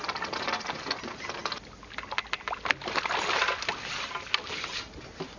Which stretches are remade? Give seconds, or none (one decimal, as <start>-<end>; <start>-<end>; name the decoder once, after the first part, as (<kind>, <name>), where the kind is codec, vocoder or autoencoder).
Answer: none